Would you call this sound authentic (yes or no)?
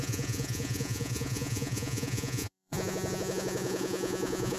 no